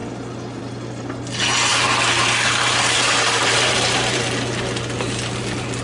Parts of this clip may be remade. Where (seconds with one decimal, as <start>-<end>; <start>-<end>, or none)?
1.7-4.2